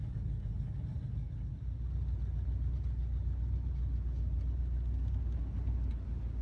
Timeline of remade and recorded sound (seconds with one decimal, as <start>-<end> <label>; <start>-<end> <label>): 0.0-6.4 recorded